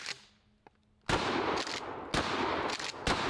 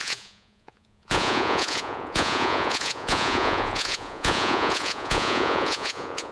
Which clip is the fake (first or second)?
second